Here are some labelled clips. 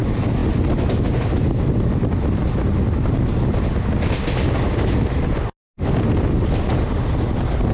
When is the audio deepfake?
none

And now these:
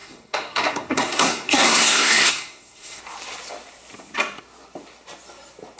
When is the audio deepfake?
0.0-3.0

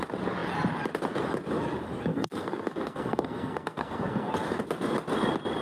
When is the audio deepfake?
2.1-4.3